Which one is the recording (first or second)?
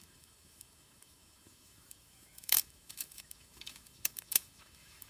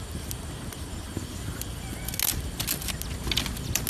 second